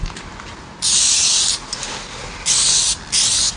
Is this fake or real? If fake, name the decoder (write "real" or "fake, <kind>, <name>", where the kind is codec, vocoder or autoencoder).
real